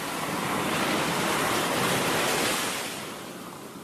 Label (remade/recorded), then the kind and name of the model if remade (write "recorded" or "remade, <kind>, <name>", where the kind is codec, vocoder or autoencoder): recorded